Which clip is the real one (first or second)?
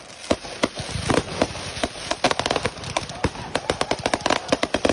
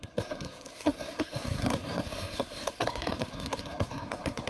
first